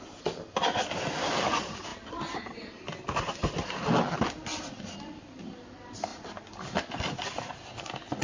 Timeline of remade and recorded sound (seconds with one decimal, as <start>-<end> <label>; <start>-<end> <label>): 0.0-8.2 recorded